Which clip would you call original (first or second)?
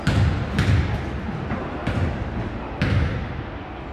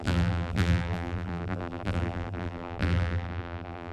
first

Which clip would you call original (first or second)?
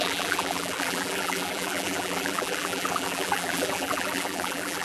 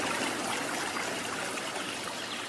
second